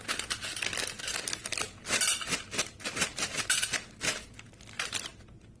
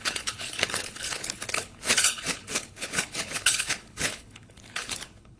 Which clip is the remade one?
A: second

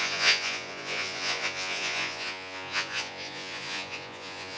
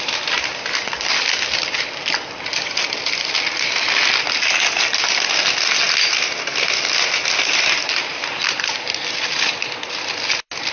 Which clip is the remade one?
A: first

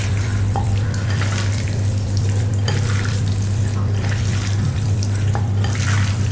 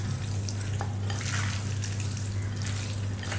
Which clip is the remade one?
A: first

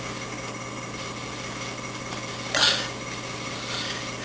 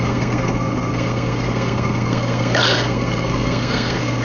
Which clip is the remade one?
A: second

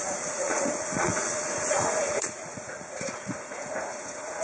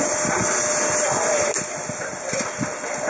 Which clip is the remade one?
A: first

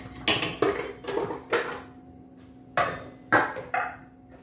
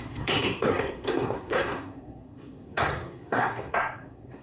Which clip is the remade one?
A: second